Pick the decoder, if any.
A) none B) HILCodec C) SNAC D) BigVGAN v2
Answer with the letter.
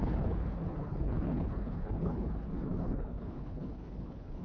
B